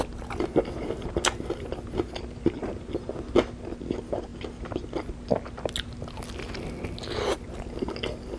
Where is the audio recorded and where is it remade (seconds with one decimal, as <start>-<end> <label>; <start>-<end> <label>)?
0.0-8.4 recorded